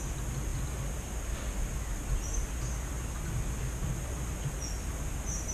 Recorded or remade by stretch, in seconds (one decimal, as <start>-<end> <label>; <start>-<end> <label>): 0.0-5.5 recorded